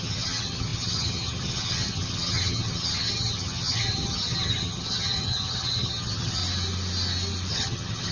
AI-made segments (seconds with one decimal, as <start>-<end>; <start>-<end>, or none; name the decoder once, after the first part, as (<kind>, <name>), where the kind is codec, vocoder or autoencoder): 0.0-6.4 (vocoder, HiFi-GAN); 7.5-8.1